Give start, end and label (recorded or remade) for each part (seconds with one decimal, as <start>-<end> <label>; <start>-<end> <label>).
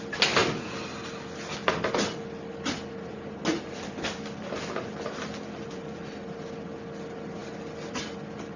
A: 0.0-8.6 recorded